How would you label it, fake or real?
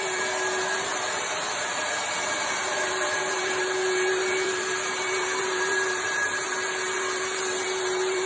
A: fake